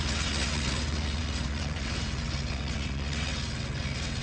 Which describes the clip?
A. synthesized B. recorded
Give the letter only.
A